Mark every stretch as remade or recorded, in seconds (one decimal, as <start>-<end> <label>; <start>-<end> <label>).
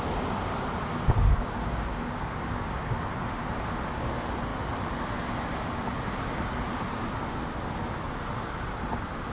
0.0-0.5 recorded; 0.5-2.9 remade; 2.9-9.3 recorded